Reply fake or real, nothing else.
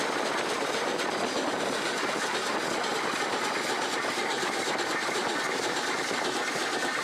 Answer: real